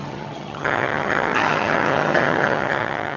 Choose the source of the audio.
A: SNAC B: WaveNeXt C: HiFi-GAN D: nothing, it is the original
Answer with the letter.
C